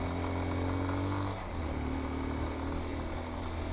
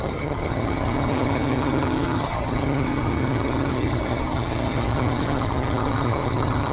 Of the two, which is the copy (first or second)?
second